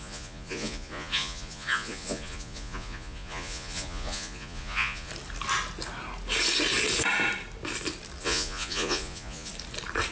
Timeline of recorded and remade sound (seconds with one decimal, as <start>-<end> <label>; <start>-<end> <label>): 0.0-5.1 remade; 5.1-8.2 recorded; 8.2-9.5 remade; 9.5-10.1 recorded